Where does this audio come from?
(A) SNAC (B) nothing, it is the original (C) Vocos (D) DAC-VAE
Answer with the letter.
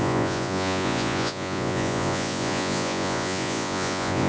C